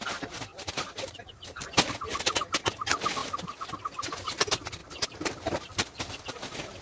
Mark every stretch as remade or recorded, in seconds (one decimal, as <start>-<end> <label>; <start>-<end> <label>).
0.0-0.5 recorded; 0.5-1.7 remade; 1.7-4.8 recorded; 4.8-6.2 remade; 6.2-6.8 recorded